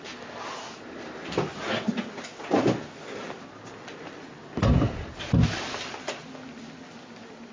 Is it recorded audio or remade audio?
recorded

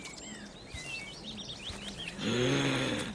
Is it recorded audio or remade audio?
recorded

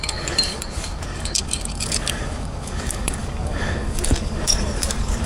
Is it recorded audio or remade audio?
remade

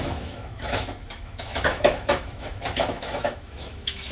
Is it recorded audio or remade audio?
remade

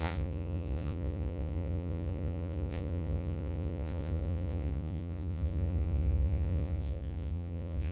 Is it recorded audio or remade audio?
remade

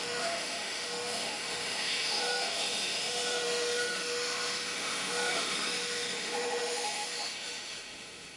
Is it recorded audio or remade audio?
remade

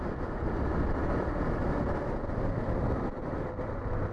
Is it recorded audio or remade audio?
recorded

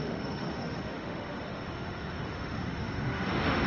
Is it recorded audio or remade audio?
remade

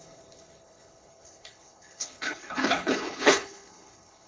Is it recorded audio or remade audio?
remade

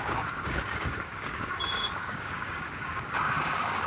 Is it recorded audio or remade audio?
remade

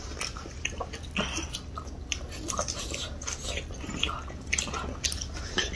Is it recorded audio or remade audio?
recorded